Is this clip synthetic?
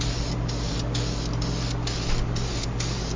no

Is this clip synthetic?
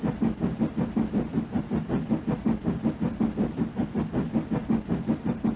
no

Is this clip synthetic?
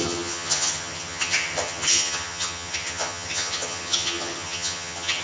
yes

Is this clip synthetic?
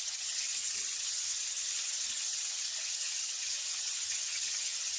yes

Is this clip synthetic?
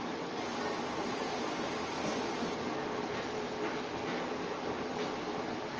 no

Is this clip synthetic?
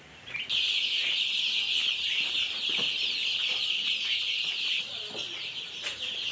no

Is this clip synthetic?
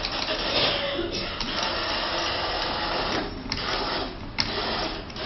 no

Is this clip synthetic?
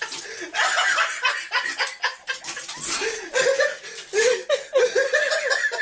no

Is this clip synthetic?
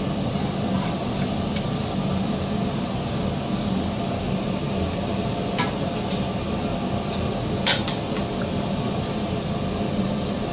no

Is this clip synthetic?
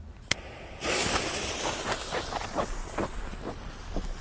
no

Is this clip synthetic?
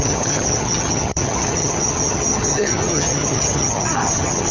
yes